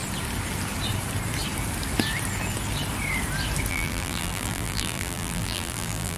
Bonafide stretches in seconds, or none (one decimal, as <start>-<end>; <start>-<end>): 0.0-3.7